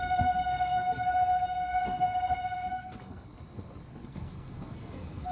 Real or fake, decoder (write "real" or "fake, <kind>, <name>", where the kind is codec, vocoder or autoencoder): fake, codec, SNAC